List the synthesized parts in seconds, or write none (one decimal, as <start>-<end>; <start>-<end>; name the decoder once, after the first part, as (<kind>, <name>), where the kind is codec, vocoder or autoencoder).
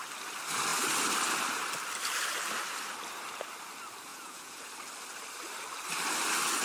4.1-4.7 (vocoder, Vocos)